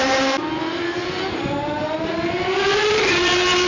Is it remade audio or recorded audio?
recorded